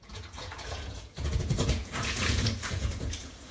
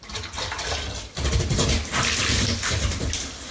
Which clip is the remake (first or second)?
first